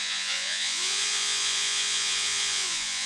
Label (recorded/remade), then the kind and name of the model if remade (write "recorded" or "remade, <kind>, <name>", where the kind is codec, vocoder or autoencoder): remade, vocoder, Vocos